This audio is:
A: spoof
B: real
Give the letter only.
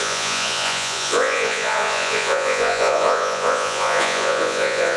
A